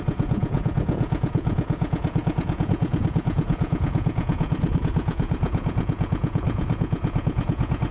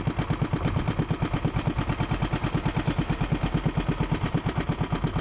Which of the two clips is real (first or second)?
second